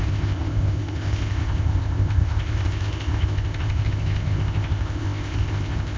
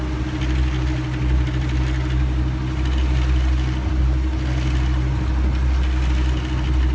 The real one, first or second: second